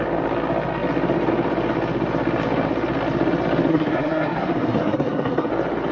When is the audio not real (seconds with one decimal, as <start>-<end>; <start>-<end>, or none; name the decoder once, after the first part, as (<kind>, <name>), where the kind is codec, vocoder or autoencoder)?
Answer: 3.7-5.5 (codec, SNAC)